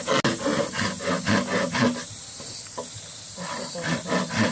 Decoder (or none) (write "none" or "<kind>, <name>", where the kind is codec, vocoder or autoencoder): none